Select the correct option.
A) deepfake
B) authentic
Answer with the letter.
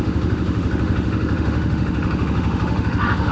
A